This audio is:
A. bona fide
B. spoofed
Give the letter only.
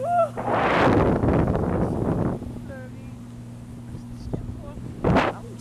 A